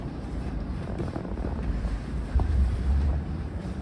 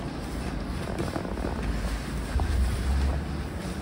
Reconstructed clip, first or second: first